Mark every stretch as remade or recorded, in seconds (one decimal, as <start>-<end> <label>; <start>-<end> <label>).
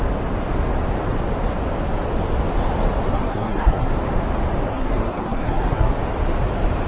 0.0-3.1 recorded; 3.1-3.9 remade; 3.9-4.7 recorded; 4.7-5.9 remade; 5.9-6.9 recorded